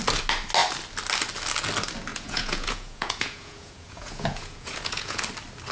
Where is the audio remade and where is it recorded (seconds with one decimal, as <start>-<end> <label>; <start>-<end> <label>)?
0.0-2.1 recorded; 2.1-5.2 remade; 5.2-5.7 recorded